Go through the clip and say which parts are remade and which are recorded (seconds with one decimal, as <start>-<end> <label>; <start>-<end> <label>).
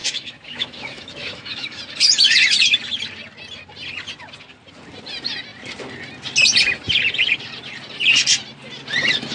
0.0-1.8 remade; 1.8-9.3 recorded